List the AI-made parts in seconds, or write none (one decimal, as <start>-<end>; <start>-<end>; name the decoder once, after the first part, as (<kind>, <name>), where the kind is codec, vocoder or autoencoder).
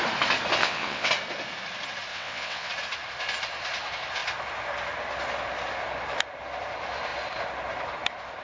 0.6-1.1 (vocoder, WaveNeXt); 2.1-2.7